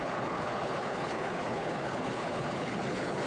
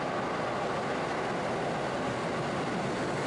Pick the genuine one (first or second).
second